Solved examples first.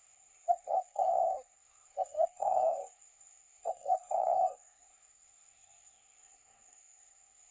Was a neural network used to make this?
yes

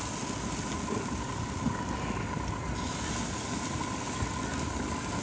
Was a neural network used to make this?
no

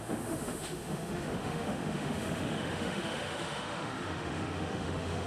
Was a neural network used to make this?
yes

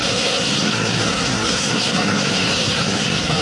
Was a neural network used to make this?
yes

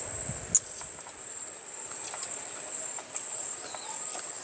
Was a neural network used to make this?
no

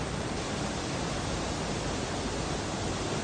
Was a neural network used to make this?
no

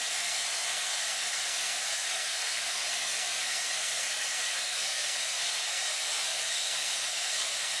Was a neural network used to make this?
yes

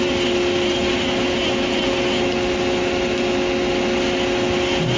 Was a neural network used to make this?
no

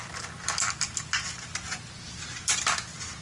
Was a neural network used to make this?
no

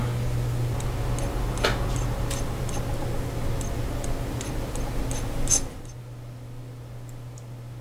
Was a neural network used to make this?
no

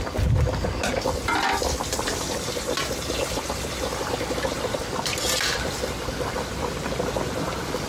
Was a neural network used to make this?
no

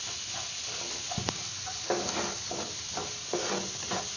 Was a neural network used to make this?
no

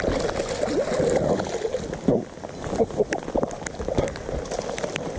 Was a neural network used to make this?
no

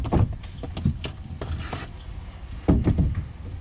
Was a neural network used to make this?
no